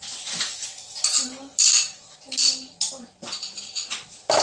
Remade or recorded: recorded